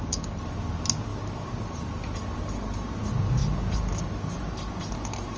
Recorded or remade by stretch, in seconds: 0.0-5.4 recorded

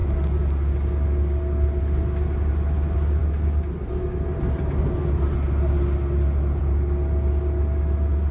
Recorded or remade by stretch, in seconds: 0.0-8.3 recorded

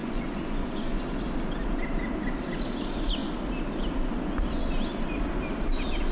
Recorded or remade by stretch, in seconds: 0.0-1.0 remade; 1.0-6.1 recorded

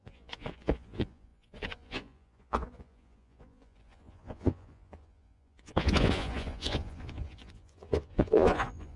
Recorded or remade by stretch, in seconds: 0.0-9.0 remade

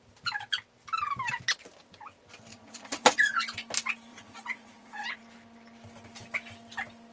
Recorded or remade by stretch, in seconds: 0.0-2.5 recorded; 2.5-3.4 remade; 3.4-4.1 recorded; 4.1-5.2 remade; 5.2-7.1 recorded

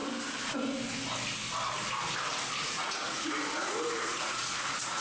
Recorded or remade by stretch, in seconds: 0.0-2.6 recorded; 2.6-5.0 remade